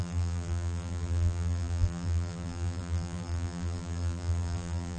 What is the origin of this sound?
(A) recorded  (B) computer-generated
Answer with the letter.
B